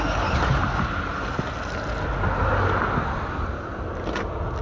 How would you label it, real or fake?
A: real